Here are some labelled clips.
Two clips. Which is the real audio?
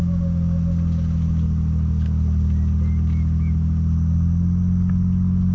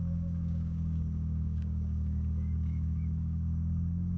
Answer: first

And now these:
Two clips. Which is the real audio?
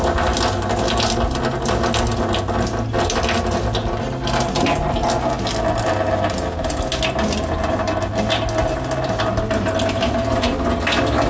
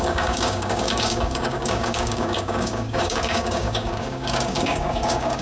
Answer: first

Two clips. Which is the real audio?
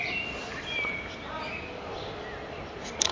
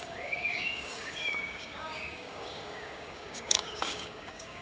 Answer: first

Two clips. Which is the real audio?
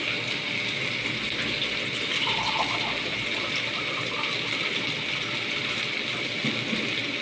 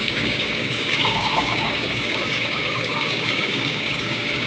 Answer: first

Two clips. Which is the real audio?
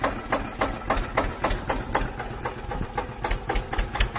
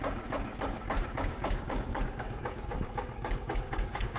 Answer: first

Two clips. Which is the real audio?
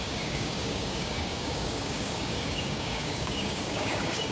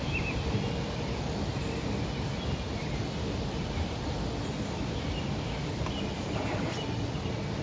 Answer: second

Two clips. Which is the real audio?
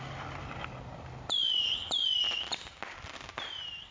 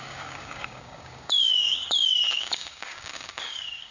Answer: first